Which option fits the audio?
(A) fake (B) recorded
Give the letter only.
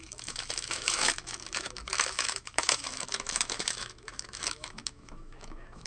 A